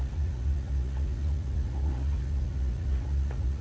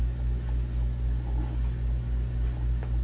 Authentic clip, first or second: second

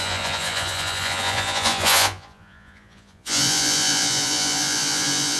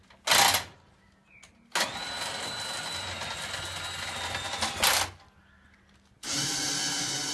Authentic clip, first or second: second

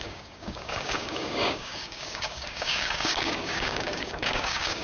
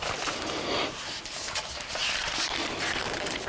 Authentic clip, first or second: second